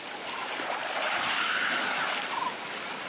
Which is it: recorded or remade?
recorded